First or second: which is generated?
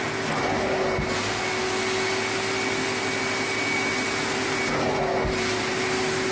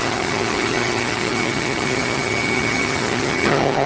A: second